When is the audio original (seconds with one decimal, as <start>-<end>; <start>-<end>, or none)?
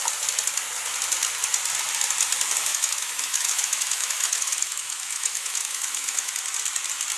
0.0-2.7; 6.3-7.2